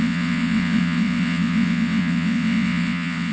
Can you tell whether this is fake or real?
fake